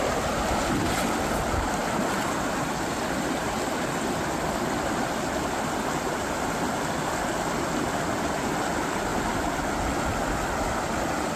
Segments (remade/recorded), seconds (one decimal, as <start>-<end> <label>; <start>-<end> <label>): 0.0-11.4 recorded

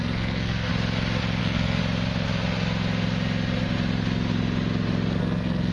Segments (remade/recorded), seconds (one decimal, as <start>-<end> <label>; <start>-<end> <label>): 0.0-0.7 remade; 0.7-1.4 recorded; 1.4-1.8 remade; 1.8-5.2 recorded; 5.2-5.7 remade